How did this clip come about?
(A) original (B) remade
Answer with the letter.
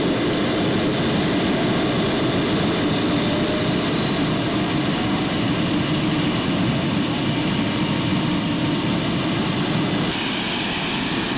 A